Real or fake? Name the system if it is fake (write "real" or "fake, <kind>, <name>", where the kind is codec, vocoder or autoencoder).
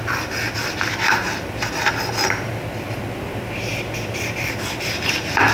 real